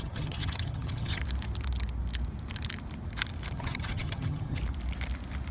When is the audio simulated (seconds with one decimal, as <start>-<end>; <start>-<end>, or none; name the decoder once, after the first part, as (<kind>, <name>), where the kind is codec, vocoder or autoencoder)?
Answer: 0.0-1.2 (vocoder, HiFi-GAN); 3.5-4.6